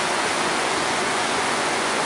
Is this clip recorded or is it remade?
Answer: remade